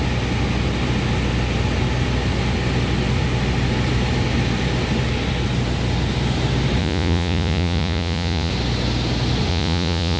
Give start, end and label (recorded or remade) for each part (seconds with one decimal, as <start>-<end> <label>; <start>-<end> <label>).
0.0-6.8 recorded; 6.8-8.5 remade; 8.5-9.5 recorded; 9.5-10.2 remade